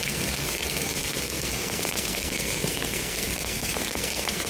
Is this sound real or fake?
fake